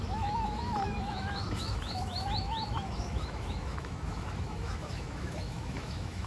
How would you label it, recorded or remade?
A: remade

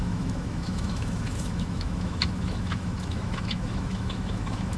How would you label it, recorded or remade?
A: remade